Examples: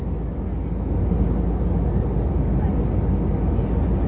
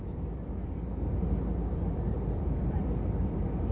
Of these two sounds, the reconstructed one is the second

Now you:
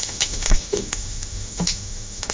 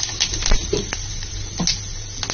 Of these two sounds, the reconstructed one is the first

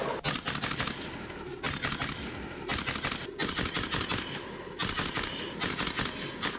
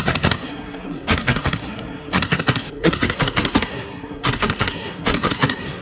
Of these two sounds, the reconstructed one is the second